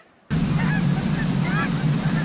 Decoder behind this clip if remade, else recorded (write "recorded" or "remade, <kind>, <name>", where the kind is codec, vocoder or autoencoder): recorded